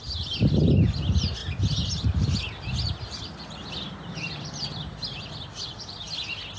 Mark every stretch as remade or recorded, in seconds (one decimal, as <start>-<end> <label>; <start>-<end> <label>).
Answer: 0.0-6.6 recorded